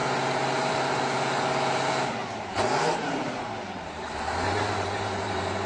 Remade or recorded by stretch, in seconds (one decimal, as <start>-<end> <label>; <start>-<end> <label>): 0.0-2.2 recorded; 2.2-5.7 remade